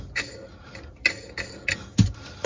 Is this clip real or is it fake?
real